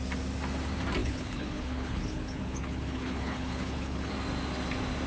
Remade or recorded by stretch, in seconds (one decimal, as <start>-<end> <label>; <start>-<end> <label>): 0.0-1.0 recorded; 1.0-4.1 remade; 4.1-5.1 recorded